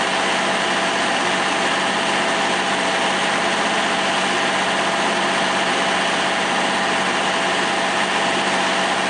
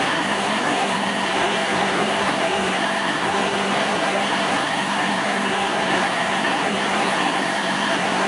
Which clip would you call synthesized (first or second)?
second